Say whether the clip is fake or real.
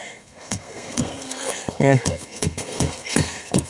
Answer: fake